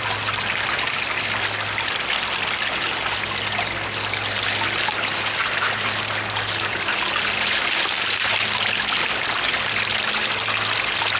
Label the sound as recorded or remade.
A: recorded